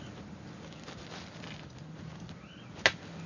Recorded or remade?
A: recorded